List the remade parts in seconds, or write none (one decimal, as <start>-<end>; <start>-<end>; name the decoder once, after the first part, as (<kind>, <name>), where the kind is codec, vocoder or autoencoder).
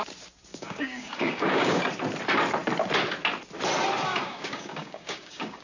0.5-1.8 (codec, DAC); 4.1-5.6